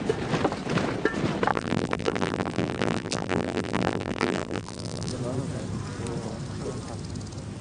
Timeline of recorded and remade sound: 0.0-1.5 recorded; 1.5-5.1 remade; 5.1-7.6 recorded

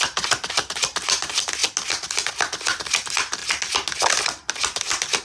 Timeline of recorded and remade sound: 0.0-5.2 recorded